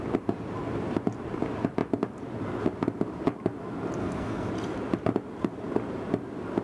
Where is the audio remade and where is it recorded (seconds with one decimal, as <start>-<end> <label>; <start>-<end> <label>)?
0.0-4.0 recorded; 4.0-4.5 remade; 4.5-6.6 recorded